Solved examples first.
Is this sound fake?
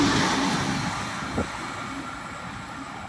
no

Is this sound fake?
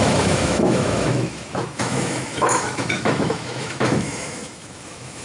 yes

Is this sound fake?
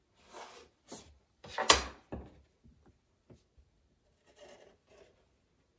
no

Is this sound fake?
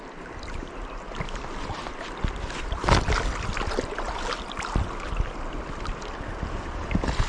no